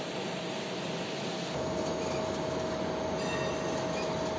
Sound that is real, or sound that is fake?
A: real